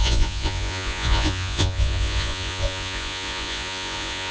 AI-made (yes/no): yes